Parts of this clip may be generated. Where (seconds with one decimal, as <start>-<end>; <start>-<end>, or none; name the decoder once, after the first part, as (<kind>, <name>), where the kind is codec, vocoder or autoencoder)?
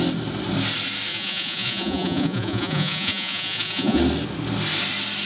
1.1-4.0 (vocoder, Vocos)